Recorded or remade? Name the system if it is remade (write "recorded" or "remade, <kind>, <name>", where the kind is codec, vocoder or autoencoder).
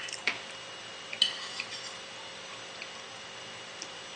recorded